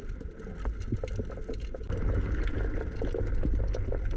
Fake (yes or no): no